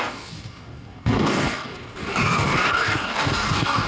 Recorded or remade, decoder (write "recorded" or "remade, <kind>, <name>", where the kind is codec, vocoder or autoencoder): remade, codec, DAC